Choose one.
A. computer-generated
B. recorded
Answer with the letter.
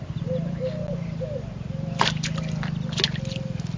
B